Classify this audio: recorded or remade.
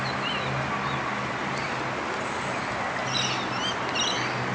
recorded